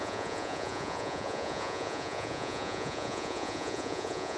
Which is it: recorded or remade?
remade